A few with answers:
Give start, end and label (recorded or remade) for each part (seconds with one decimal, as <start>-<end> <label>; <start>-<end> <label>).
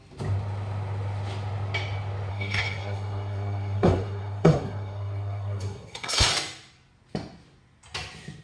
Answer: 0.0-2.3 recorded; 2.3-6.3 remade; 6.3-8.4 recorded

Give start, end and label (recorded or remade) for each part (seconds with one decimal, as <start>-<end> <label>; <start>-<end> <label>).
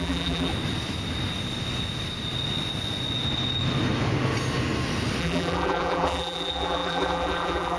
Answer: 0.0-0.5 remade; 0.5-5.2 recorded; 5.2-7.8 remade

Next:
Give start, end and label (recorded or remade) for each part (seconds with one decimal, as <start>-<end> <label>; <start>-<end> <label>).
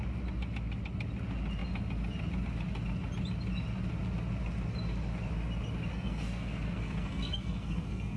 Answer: 0.0-5.9 recorded; 5.9-8.2 remade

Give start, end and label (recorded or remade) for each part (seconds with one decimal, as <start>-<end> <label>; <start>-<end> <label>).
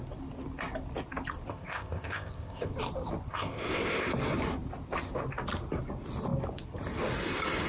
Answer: 0.0-1.5 recorded; 1.5-2.7 remade; 2.7-3.3 recorded; 3.3-4.1 remade; 4.1-7.7 recorded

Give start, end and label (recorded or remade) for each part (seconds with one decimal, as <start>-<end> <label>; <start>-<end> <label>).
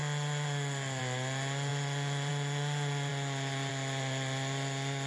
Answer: 0.0-5.1 recorded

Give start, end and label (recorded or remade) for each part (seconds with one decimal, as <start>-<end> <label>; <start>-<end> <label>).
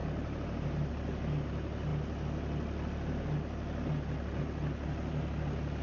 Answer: 0.0-0.9 remade; 0.9-5.8 recorded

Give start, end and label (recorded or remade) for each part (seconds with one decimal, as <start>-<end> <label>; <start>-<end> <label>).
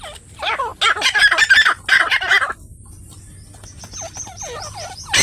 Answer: 0.0-5.2 recorded